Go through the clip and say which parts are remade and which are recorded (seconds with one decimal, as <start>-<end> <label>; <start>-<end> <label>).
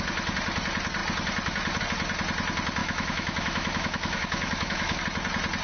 0.0-2.8 recorded; 2.8-5.0 remade; 5.0-5.6 recorded